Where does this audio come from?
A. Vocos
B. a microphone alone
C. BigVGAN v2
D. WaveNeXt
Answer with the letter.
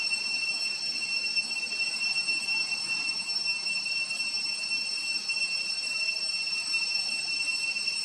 B